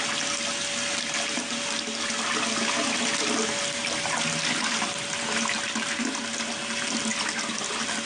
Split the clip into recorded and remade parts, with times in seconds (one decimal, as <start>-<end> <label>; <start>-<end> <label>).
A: 0.0-8.1 recorded